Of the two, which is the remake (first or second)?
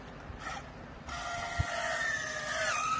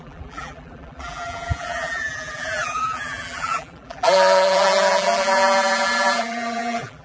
second